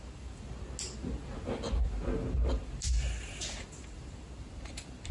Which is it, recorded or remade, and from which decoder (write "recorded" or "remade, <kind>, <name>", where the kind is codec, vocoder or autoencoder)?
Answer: recorded